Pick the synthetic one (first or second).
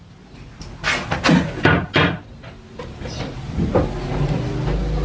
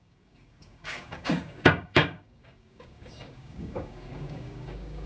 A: second